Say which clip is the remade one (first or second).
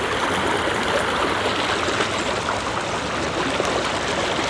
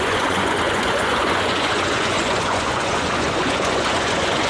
second